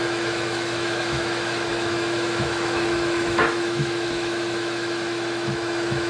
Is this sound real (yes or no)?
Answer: no